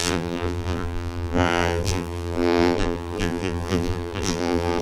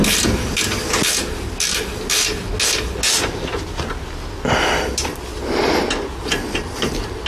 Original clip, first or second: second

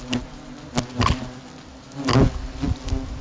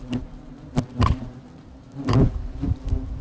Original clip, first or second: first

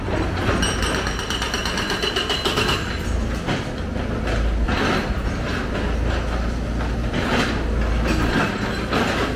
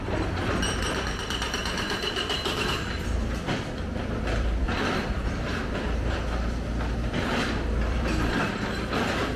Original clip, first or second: first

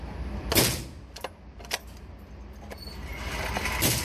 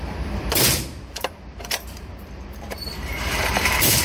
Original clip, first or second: first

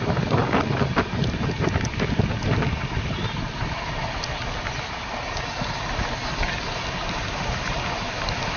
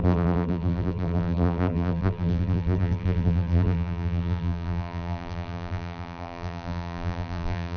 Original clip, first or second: first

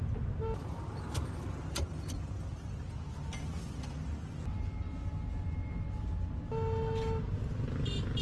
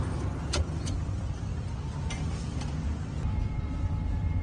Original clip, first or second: first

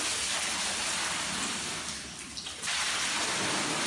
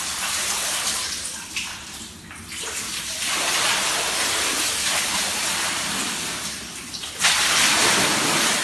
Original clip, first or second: first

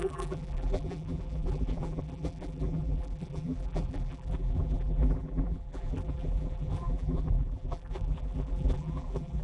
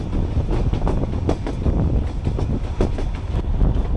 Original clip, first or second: second